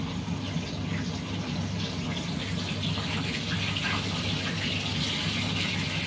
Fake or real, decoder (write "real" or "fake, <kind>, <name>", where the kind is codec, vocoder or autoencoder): real